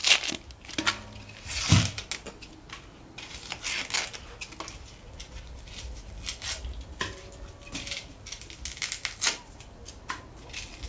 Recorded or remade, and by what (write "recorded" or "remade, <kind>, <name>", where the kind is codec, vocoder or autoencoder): recorded